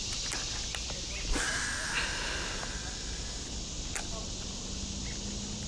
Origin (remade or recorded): recorded